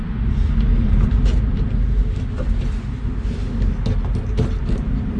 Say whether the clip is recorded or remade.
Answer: recorded